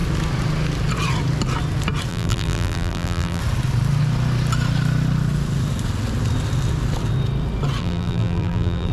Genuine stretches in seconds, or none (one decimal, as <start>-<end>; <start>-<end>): 0.0-2.1; 3.4-7.8